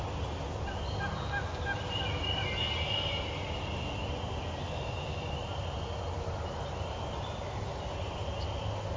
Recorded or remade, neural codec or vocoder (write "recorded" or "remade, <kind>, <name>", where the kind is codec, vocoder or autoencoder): recorded